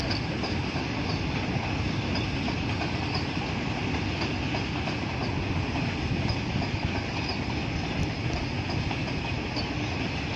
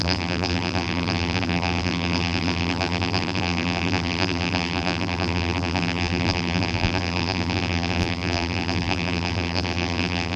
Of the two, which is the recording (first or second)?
first